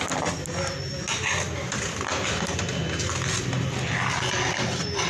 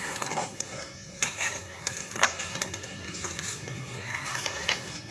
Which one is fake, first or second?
second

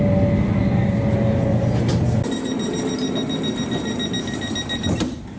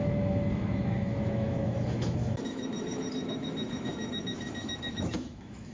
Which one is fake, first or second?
second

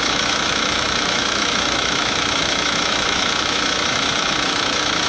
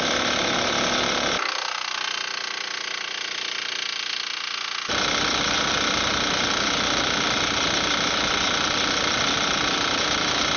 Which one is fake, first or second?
first